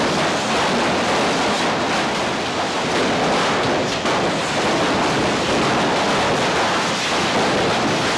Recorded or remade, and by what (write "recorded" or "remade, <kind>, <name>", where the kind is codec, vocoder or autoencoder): recorded